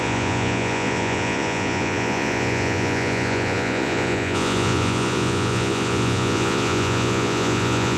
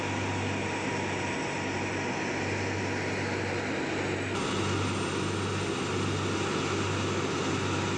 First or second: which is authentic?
second